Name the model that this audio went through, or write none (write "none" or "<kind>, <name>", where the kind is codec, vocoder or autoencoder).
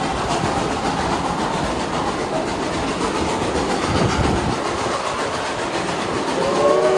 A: none